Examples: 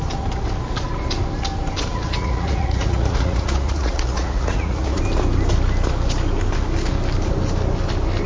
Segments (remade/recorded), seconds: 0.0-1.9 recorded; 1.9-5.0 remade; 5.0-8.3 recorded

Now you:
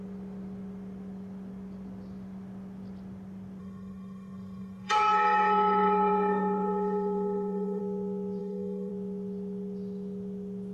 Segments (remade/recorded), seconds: 0.0-3.6 recorded; 3.6-7.8 remade; 7.8-8.4 recorded; 8.4-8.9 remade; 8.9-10.7 recorded

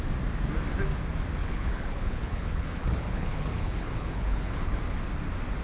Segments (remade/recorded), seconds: 0.0-1.4 recorded; 1.4-4.8 remade; 4.8-5.6 recorded

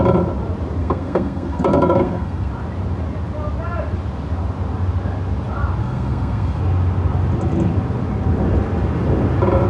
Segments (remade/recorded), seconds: 0.0-0.8 recorded; 0.8-2.5 remade; 2.5-5.8 recorded; 5.8-6.6 remade; 6.6-9.7 recorded

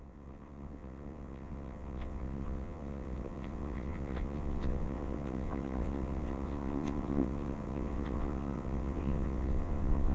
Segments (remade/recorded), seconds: 0.0-10.1 remade

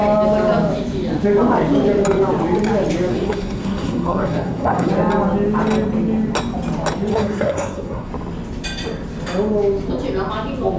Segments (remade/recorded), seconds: 0.0-3.1 recorded; 3.1-4.9 remade; 4.9-7.1 recorded; 7.1-8.1 remade; 8.1-10.8 recorded